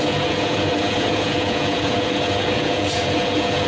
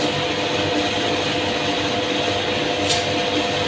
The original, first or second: second